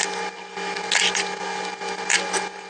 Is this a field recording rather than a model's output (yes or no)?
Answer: yes